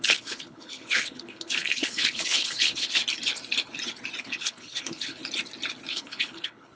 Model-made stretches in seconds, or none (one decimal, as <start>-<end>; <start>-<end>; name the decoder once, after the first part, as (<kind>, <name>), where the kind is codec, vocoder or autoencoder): 0.0-3.0 (codec, HILCodec); 4.2-5.2; 5.9-6.8